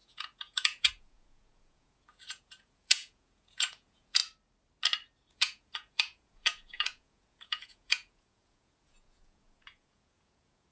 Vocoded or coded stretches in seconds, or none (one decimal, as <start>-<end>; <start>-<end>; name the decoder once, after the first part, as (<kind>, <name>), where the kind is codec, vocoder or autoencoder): 0.0-4.2 (vocoder, Vocos); 5.3-10.7